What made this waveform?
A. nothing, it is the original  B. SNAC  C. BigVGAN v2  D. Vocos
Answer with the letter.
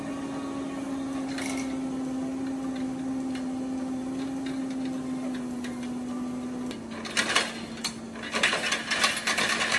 A